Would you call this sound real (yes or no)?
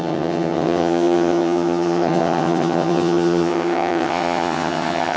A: no